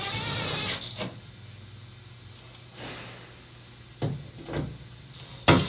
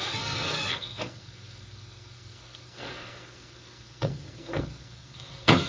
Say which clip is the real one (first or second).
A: first